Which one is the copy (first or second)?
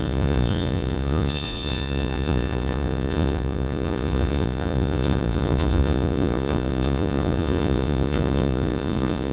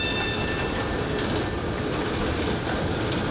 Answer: first